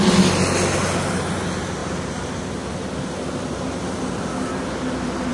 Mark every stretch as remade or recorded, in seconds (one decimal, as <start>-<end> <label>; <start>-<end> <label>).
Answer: 0.0-5.3 recorded